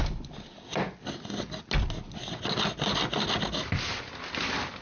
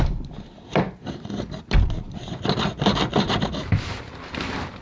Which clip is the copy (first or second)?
second